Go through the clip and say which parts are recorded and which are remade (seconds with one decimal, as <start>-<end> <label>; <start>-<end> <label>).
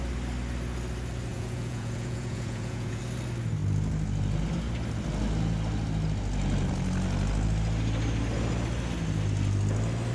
0.0-1.3 recorded; 1.3-3.0 remade; 3.0-10.1 recorded